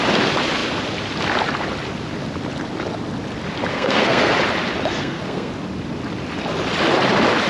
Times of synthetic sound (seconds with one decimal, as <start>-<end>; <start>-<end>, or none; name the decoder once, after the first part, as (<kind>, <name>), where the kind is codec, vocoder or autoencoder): 3.7-4.3 (codec, SNAC); 5.0-5.5